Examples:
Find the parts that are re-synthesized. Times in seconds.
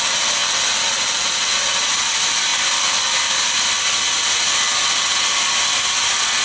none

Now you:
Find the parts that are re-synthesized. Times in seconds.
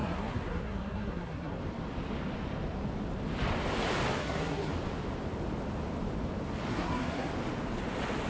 0.0-1.6 (codec, SNAC); 4.2-4.7; 6.7-7.3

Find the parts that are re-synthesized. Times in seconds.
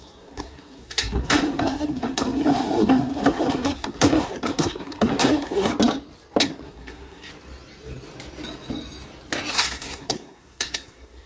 0.0-5.7 (codec, SNAC); 6.4-7.3; 9.5-11.3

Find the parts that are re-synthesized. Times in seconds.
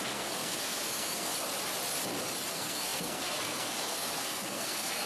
0.0-1.3 (codec, SNAC); 2.5-5.1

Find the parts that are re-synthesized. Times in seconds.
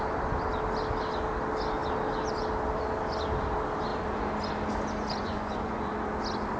5.2-5.9 (vocoder, Vocos)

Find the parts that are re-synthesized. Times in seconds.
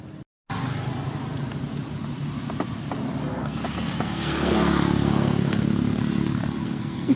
3.4-7.2 (codec, SNAC)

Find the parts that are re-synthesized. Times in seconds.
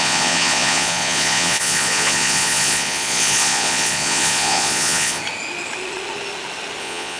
0.0-5.2 (vocoder, Vocos); 6.8-7.2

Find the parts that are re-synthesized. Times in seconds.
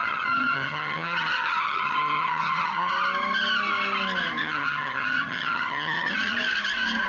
0.0-2.9 (vocoder, HiFi-GAN); 4.4-6.4